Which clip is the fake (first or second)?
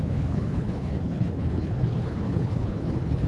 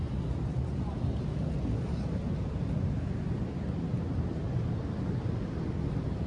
first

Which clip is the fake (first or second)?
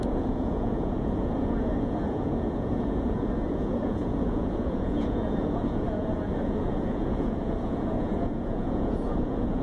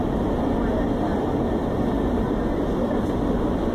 first